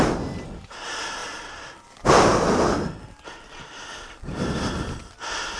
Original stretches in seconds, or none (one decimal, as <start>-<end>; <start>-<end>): 0.0-5.6